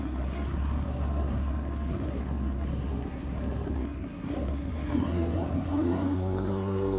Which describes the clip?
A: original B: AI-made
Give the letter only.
B